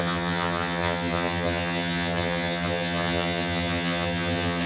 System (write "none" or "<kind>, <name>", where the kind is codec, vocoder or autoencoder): vocoder, HiFi-GAN